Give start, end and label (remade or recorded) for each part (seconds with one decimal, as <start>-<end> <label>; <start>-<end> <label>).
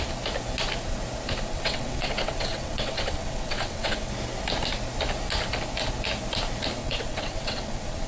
0.0-1.5 recorded; 1.5-4.1 remade; 4.1-6.8 recorded; 6.8-8.1 remade